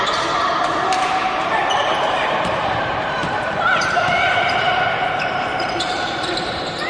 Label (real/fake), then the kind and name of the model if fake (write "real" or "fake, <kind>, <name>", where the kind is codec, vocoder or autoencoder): fake, vocoder, BigVGAN v2